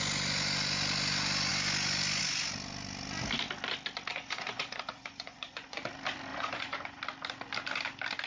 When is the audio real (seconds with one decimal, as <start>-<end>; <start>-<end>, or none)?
0.0-4.1; 5.8-6.3; 7.0-8.3